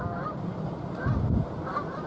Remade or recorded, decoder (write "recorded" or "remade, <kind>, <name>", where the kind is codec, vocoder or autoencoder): recorded